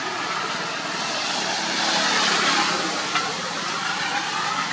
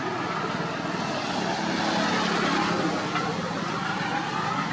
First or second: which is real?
second